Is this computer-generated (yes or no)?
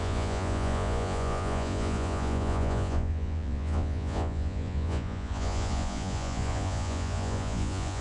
yes